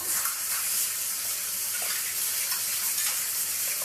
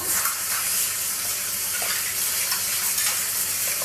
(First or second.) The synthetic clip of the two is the first